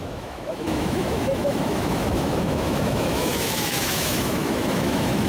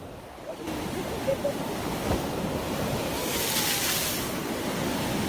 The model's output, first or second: first